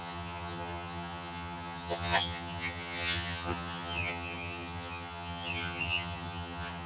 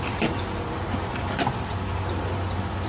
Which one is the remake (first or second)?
first